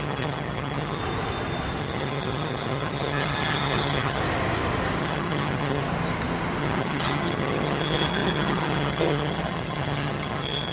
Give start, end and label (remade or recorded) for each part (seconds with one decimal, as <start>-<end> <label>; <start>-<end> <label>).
0.0-1.0 remade; 1.0-1.8 recorded; 1.8-4.2 remade; 4.2-5.0 recorded; 5.0-5.8 remade; 5.8-6.6 recorded; 6.6-10.7 remade